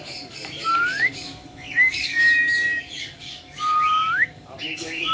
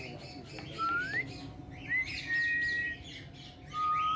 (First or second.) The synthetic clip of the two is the first